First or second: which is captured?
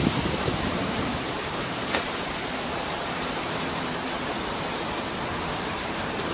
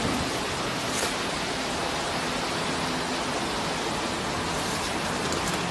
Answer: second